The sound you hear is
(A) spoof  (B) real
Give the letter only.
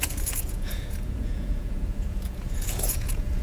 A